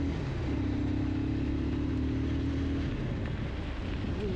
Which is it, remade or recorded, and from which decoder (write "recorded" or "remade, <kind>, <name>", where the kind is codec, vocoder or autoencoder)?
recorded